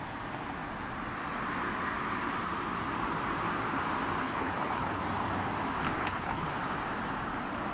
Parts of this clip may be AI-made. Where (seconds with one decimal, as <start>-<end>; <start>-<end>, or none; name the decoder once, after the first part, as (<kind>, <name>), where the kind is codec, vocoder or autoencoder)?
4.2-5.0 (codec, HILCodec); 6.0-6.5